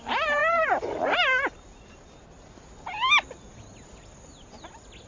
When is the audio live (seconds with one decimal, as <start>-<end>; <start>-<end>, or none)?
0.0-5.1